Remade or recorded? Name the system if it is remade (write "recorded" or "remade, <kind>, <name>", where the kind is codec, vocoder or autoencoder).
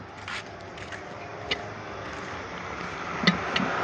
recorded